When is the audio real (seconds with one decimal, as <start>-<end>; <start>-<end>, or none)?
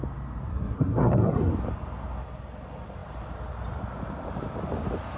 0.0-0.5; 1.5-5.2